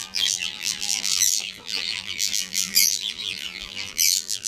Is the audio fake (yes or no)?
yes